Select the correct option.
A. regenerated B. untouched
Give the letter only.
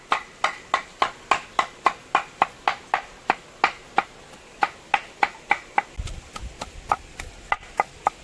B